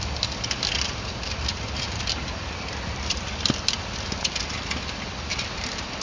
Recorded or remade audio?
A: remade